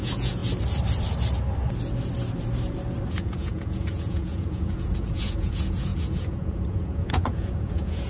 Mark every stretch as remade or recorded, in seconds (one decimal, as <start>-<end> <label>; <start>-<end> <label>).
0.0-0.4 remade; 0.4-3.0 recorded; 3.0-8.1 remade